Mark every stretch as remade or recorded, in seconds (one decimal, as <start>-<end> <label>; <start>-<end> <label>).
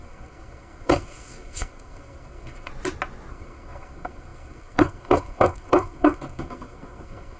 0.0-2.7 remade; 2.7-3.3 recorded; 3.3-7.4 remade